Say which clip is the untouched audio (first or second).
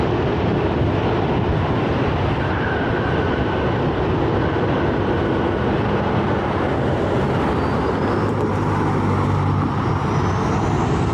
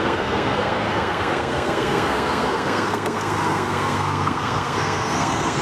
first